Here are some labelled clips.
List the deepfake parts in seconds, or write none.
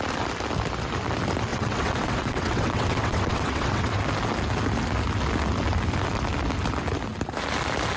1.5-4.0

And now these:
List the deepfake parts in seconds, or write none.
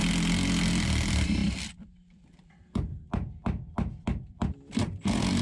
0.0-2.9; 4.0-5.4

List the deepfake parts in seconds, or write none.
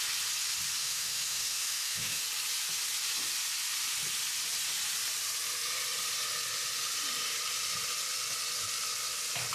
0.8-2.2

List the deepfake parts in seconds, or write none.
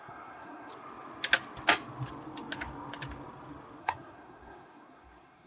0.0-0.7; 3.8-5.5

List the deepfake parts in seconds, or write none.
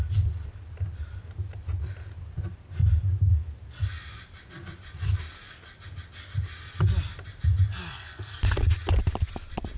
7.7-8.4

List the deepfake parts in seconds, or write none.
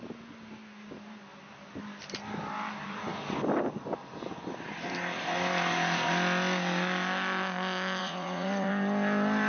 8.0-8.7